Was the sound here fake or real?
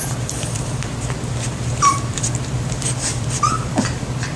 fake